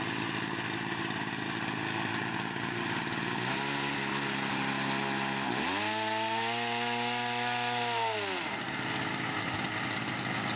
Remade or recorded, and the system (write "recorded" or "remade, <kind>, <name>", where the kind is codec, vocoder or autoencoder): recorded